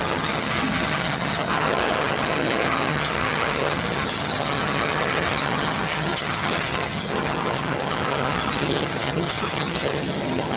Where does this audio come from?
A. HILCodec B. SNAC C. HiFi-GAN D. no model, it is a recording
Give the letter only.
C